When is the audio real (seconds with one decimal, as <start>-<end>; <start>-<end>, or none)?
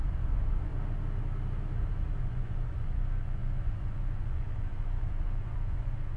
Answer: 0.7-2.2